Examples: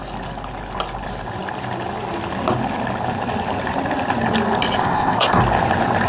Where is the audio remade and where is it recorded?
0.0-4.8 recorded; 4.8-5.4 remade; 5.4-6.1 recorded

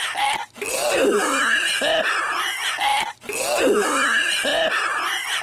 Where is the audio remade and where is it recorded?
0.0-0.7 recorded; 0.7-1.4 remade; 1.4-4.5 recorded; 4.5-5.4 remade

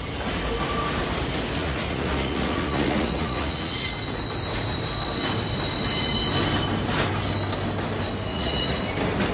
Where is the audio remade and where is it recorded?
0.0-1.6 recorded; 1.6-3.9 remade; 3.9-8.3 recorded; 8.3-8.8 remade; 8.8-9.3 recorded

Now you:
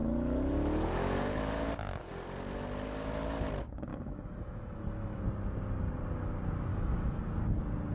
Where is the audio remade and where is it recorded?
0.0-2.1 remade; 2.1-3.9 recorded; 3.9-5.2 remade; 5.2-6.7 recorded; 6.7-7.2 remade; 7.2-7.9 recorded

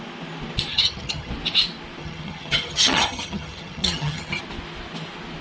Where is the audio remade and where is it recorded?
0.0-0.7 recorded; 0.7-1.3 remade; 1.3-2.0 recorded; 2.0-4.4 remade; 4.4-5.4 recorded

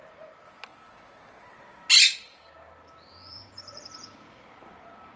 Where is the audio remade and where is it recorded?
0.0-3.3 recorded; 3.3-3.8 remade; 3.8-5.2 recorded

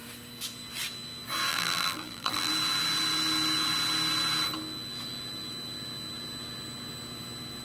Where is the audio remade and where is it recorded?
0.0-1.5 recorded; 1.5-2.5 remade; 2.5-7.6 recorded

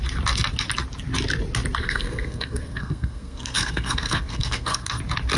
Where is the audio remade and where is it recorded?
0.0-1.8 recorded; 1.8-5.0 remade; 5.0-5.4 recorded